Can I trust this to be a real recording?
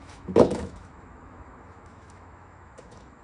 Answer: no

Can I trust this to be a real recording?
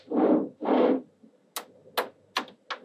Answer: yes